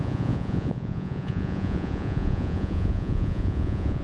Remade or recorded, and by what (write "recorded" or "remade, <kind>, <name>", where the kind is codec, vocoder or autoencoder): remade, vocoder, Vocos